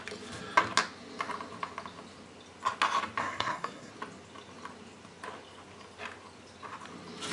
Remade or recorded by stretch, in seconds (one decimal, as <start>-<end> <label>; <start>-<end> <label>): 0.0-3.2 recorded; 3.2-3.9 remade; 3.9-7.3 recorded